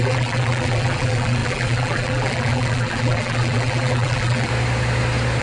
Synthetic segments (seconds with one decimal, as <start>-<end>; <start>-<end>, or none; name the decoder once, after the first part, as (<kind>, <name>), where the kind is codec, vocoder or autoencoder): 0.0-4.5 (vocoder, BigVGAN v2)